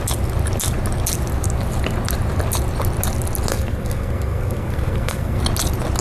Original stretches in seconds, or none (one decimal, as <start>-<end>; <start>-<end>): 0.0-3.5; 5.4-6.0